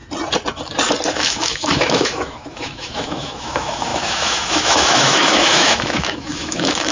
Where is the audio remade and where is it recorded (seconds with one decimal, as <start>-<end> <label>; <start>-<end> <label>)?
0.0-1.1 recorded; 1.1-6.9 remade